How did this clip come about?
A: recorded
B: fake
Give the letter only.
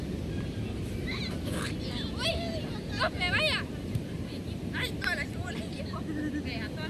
A